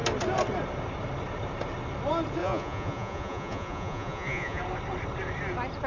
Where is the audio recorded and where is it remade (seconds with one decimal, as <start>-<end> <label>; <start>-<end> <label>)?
0.0-2.4 recorded; 2.4-4.6 remade; 4.6-5.9 recorded